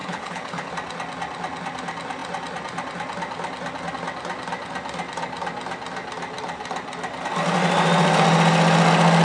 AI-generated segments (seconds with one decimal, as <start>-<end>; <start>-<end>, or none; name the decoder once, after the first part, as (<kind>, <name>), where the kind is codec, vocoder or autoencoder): 0.0-0.7 (codec, HILCodec)